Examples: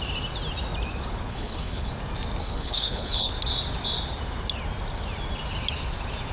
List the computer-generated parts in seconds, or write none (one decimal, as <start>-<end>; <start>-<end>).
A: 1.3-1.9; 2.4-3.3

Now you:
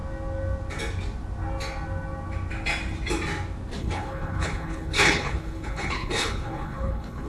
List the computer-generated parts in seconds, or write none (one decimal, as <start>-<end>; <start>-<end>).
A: 3.8-7.3

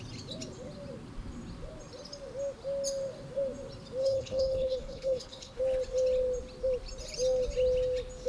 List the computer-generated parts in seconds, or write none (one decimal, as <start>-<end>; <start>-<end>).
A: 4.0-5.6

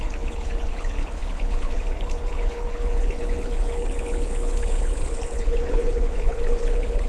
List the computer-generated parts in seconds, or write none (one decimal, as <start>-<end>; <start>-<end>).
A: 0.0-7.1

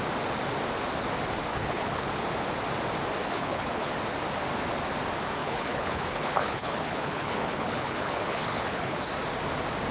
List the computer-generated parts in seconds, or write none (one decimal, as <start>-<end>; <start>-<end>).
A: 1.5-2.1; 3.2-3.9; 5.4-9.0

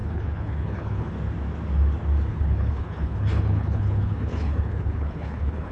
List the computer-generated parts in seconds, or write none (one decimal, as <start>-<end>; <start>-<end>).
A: 0.0-1.1; 2.3-5.7

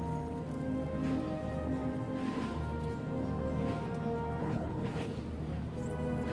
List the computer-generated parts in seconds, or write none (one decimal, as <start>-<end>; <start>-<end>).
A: 4.4-5.2